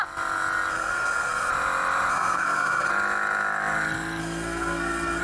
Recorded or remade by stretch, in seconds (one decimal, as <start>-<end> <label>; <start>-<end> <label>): 0.0-0.7 recorded; 0.7-1.5 remade; 1.5-2.1 recorded; 2.1-2.9 remade; 2.9-4.2 recorded; 4.2-5.2 remade